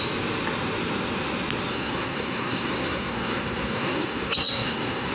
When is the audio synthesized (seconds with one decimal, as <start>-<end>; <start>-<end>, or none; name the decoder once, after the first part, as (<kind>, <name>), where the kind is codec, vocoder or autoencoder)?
1.7-5.1 (codec, SNAC)